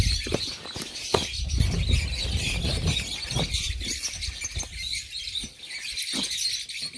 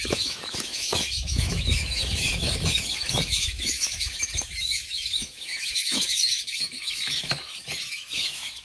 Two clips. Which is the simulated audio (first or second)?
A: second